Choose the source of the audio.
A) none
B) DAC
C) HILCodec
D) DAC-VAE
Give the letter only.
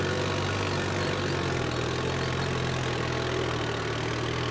A